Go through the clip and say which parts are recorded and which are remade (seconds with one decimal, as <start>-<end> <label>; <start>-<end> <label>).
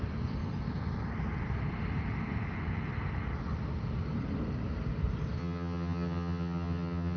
0.0-5.4 recorded; 5.4-7.2 remade